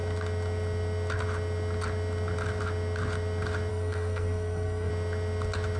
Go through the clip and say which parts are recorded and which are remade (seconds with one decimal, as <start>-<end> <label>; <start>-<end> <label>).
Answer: 0.0-3.7 recorded; 3.7-4.9 remade; 4.9-5.8 recorded